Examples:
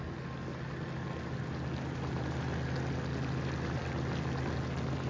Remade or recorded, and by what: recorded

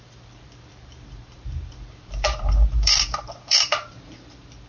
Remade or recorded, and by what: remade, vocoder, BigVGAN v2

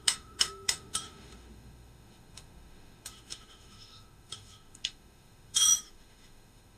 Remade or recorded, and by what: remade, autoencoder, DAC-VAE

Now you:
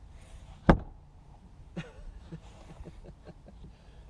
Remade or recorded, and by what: recorded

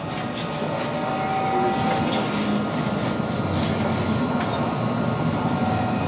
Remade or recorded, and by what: recorded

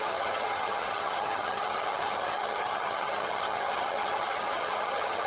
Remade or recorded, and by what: remade, vocoder, HiFi-GAN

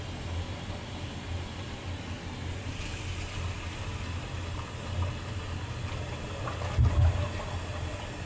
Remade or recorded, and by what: recorded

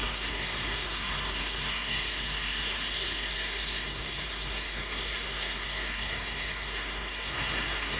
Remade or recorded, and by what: remade, codec, SNAC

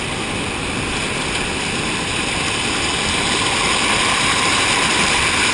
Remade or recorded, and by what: recorded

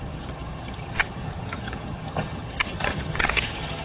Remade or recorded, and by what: remade, vocoder, HiFi-GAN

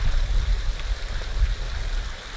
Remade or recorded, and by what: recorded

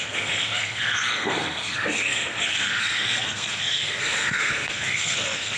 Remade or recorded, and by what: remade, codec, SNAC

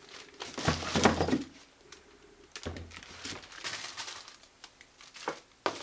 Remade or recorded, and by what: recorded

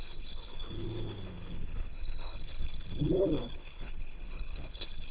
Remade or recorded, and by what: remade, codec, HILCodec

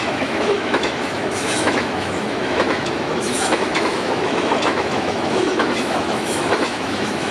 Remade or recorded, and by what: remade, autoencoder, DAC-VAE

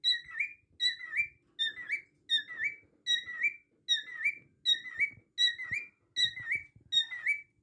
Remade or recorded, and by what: recorded